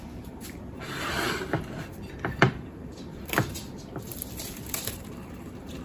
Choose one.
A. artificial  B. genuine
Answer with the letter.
A